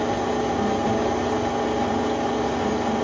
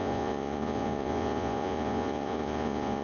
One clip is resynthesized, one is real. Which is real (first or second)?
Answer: first